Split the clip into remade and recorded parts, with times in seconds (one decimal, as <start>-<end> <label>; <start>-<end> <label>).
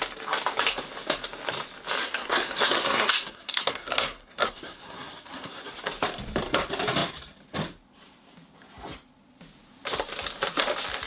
0.0-2.0 recorded; 2.0-5.7 remade; 5.7-11.1 recorded